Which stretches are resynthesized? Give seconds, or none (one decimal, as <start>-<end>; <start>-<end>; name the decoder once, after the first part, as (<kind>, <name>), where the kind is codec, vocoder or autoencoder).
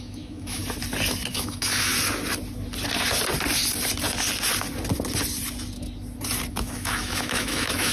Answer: 0.0-0.6 (autoencoder, DAC-VAE); 1.3-1.9; 6.5-7.9